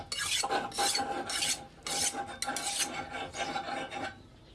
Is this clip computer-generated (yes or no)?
no